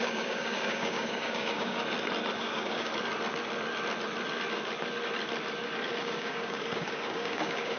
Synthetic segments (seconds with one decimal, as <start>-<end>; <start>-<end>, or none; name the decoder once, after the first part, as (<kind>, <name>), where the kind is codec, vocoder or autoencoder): 0.0-1.8 (codec, DAC); 2.4-2.9; 6.0-7.8